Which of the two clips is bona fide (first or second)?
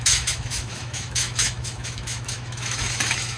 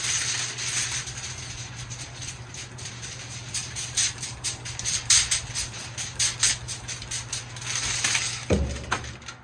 second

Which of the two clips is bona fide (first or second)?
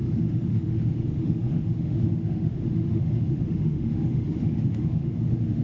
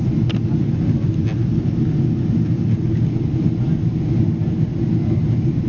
second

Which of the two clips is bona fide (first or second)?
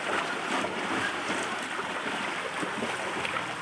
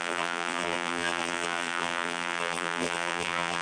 first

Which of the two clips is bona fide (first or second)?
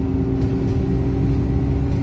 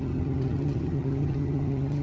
first